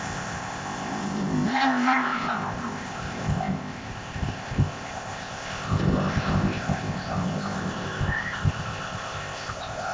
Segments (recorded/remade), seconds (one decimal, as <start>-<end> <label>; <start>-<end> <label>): 0.0-9.9 remade

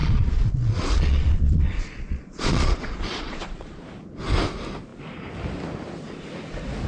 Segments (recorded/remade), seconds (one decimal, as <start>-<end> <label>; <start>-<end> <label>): 0.0-3.8 remade; 3.8-6.9 recorded

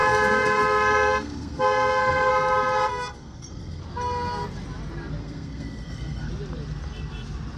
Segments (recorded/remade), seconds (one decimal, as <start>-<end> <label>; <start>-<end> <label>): 0.0-2.3 remade; 2.3-3.1 recorded; 3.1-3.8 remade; 3.8-5.2 recorded; 5.2-6.3 remade; 6.3-7.6 recorded

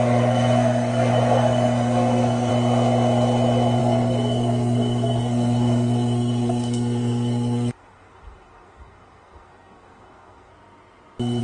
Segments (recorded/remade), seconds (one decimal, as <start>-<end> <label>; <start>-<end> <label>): 0.0-2.5 remade; 2.5-3.8 recorded; 3.8-10.5 remade; 10.5-11.4 recorded

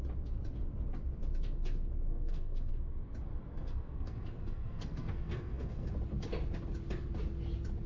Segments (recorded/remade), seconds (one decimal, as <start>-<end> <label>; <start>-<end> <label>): 0.0-2.1 recorded; 2.1-2.7 remade; 2.7-3.5 recorded; 3.5-5.9 remade; 5.9-7.9 recorded

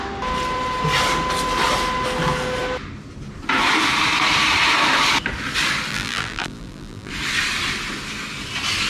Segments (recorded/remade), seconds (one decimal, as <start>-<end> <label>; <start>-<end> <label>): 0.0-5.9 recorded; 5.9-7.1 remade; 7.1-8.9 recorded